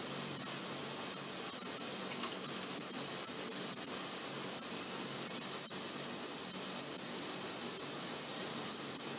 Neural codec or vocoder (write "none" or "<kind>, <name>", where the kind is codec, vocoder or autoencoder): none